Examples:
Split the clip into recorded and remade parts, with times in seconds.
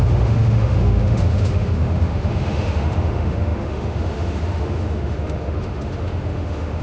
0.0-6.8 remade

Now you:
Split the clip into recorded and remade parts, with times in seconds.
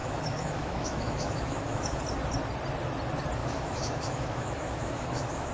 0.0-2.0 remade; 2.0-3.4 recorded; 3.4-5.5 remade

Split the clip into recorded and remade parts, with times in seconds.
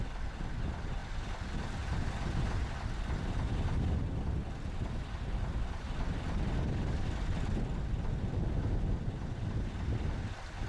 0.0-10.7 recorded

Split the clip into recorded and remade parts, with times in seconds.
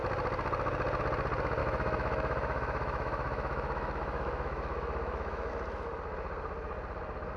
0.0-1.6 recorded; 1.6-5.5 remade; 5.5-7.4 recorded